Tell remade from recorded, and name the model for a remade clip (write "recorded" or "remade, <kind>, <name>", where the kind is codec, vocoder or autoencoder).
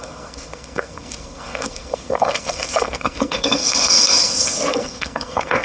remade, codec, SNAC